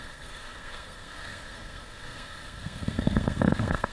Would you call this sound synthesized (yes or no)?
yes